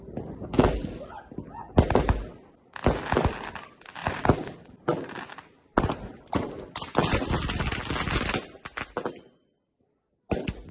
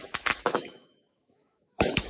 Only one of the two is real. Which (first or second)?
first